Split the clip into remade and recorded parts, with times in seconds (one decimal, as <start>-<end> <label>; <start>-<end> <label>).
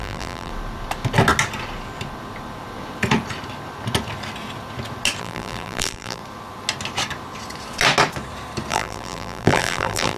0.0-0.5 remade; 0.5-5.2 recorded; 5.2-6.2 remade; 6.2-8.7 recorded; 8.7-10.2 remade